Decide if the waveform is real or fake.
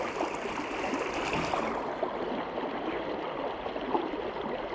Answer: real